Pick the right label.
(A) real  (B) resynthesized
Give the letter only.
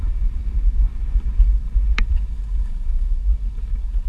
B